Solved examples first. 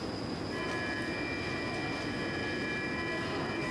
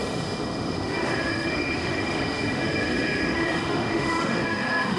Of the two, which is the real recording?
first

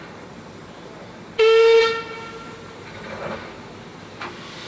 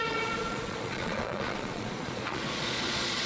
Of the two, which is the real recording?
first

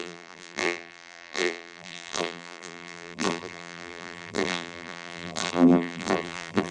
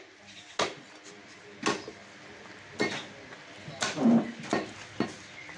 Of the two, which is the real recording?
second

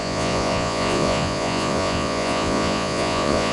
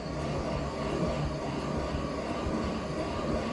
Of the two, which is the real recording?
second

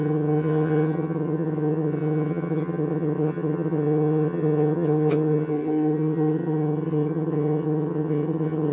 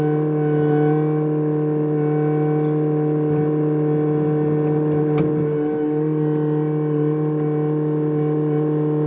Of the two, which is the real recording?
second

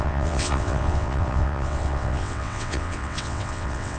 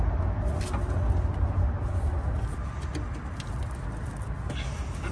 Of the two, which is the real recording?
second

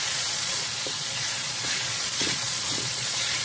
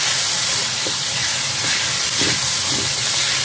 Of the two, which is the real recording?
second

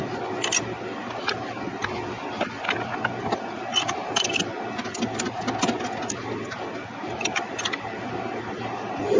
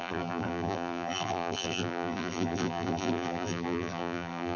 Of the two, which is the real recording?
first